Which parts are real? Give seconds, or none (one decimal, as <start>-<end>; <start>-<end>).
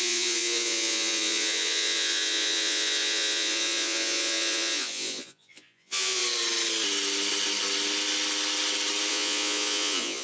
6.2-9.1